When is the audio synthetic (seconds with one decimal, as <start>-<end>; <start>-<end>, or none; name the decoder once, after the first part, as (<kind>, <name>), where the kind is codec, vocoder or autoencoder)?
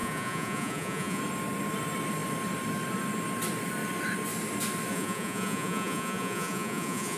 0.0-1.2 (vocoder, Vocos); 4.9-7.2